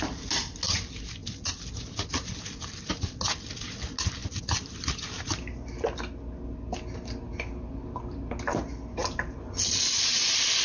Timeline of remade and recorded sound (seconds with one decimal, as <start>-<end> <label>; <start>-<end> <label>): 0.0-1.2 recorded; 1.2-2.4 remade; 2.4-4.2 recorded; 4.2-5.2 remade; 5.2-10.6 recorded